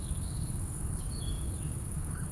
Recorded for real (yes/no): no